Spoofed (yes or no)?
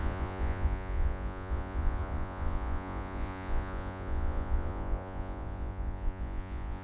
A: yes